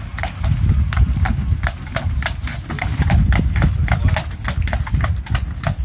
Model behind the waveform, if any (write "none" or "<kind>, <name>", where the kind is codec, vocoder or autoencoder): none